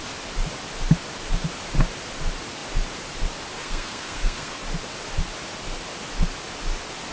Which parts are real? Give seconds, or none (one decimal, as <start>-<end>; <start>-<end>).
0.0-3.6; 4.6-7.1